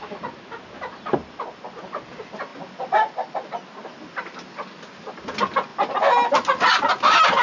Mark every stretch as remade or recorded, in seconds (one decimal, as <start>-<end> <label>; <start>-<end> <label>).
0.0-7.4 recorded